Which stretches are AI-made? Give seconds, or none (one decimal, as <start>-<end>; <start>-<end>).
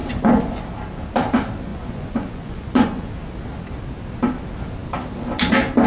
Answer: 0.0-0.6; 1.7-3.1